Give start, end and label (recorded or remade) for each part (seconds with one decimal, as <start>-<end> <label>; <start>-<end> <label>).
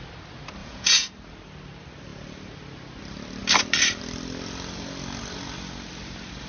0.0-0.6 recorded; 0.6-1.1 remade; 1.1-6.5 recorded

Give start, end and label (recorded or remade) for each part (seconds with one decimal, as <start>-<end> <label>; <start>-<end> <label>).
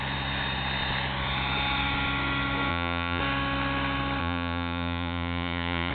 0.0-2.7 recorded; 2.7-3.2 remade; 3.2-4.2 recorded; 4.2-5.9 remade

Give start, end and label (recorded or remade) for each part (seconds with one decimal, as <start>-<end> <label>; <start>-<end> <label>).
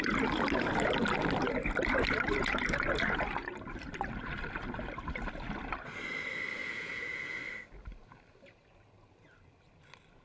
0.0-6.6 recorded; 6.6-7.4 remade; 7.4-10.2 recorded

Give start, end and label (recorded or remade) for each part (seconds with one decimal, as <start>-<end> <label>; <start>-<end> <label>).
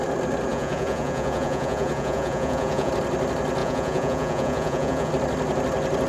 0.0-0.5 recorded; 0.5-2.9 remade; 2.9-3.6 recorded; 3.6-5.1 remade; 5.1-6.1 recorded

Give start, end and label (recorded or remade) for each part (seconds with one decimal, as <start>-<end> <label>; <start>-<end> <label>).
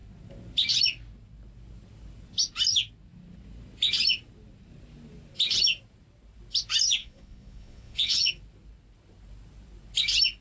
0.0-7.0 recorded; 7.0-8.3 remade; 8.3-10.4 recorded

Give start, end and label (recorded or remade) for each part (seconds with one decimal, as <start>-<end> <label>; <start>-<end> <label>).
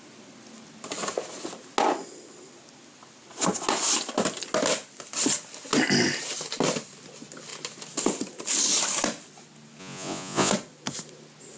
0.0-9.8 recorded; 9.8-10.5 remade; 10.5-11.6 recorded